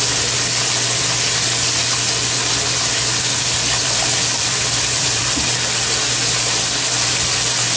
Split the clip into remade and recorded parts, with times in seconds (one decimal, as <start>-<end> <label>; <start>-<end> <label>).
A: 0.0-3.8 recorded; 3.8-5.2 remade; 5.2-7.8 recorded

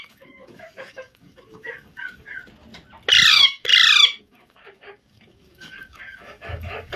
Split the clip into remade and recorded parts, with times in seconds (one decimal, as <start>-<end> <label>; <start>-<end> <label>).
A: 0.0-2.4 remade; 2.4-3.3 recorded; 3.3-3.7 remade; 3.7-4.2 recorded; 4.2-7.0 remade